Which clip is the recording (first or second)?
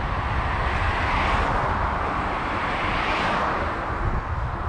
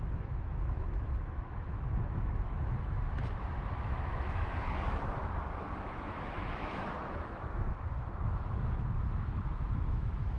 first